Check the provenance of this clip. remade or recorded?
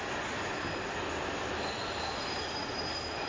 recorded